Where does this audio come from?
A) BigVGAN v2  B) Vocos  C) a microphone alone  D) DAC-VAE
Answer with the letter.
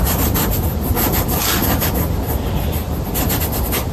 A